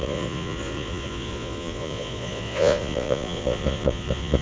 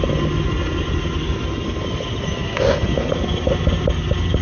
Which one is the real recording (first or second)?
second